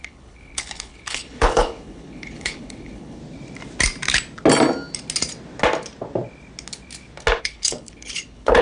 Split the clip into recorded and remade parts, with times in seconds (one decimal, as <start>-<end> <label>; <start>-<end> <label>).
0.0-3.2 remade; 3.2-7.4 recorded; 7.4-8.6 remade